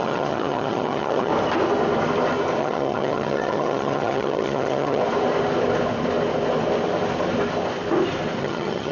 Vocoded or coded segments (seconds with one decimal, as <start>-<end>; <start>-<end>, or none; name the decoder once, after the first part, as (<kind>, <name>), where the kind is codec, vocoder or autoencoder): 0.0-1.3 (vocoder, HiFi-GAN); 2.6-5.0; 8.4-8.9